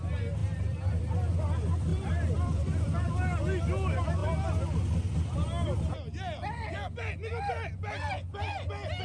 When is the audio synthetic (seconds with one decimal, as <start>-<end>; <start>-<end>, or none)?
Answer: 0.4-1.4; 1.9-3.1

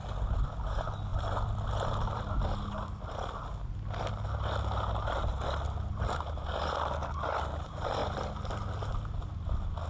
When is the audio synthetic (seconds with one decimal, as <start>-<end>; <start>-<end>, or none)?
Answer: 1.1-4.0

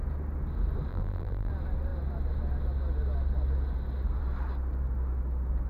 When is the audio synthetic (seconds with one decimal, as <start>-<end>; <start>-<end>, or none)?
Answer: 0.9-1.5

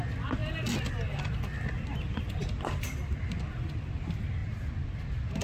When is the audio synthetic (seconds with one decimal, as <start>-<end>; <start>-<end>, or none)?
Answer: 4.4-5.4

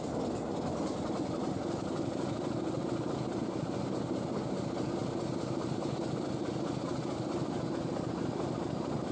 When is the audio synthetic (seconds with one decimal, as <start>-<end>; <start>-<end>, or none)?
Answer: 5.0-6.0

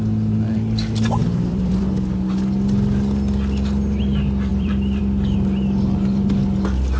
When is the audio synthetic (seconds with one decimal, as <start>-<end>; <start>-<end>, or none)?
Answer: 1.2-1.8; 4.5-5.0